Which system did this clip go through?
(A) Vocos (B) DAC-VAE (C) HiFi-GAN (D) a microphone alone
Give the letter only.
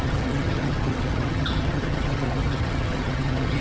C